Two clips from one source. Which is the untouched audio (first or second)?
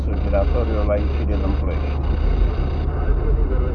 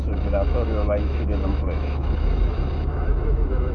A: first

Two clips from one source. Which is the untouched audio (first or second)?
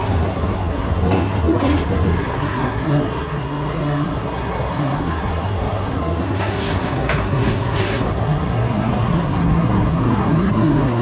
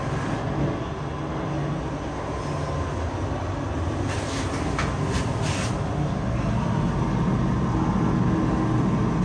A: second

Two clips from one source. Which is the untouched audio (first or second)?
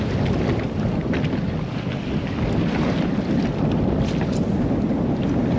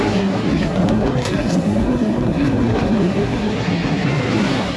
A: first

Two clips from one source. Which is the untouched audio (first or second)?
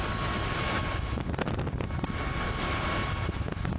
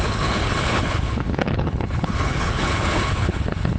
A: first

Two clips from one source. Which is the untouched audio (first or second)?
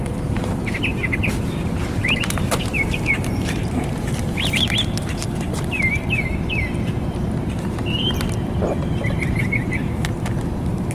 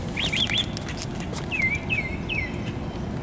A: second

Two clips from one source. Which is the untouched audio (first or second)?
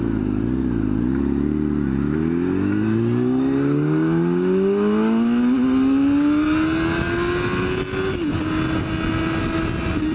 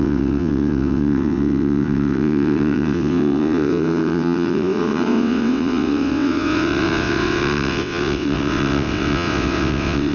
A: first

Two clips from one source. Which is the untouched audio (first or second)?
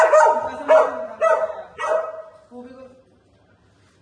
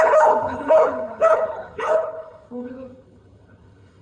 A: first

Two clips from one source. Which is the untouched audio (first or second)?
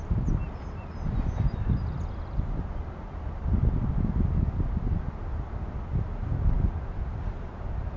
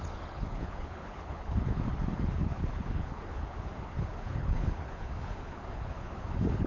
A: first